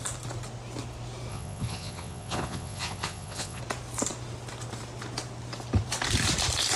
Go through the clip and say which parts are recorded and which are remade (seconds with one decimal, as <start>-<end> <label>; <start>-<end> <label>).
0.0-1.3 recorded; 1.3-3.6 remade; 3.6-6.8 recorded